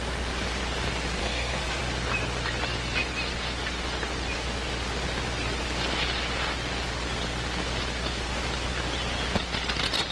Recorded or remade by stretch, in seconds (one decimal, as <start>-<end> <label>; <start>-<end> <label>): 0.0-1.2 recorded; 1.2-1.8 remade; 1.8-10.1 recorded